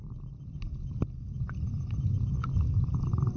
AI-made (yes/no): no